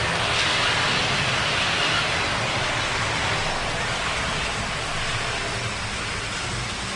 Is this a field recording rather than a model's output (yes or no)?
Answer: yes